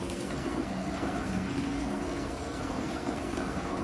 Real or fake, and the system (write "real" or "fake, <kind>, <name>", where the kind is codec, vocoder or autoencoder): fake, codec, SNAC